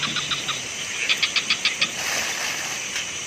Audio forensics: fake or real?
real